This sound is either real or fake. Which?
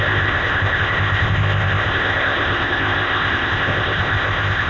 fake